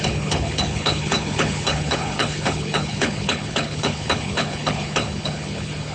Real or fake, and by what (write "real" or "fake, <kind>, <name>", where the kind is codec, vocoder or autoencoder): fake, codec, HILCodec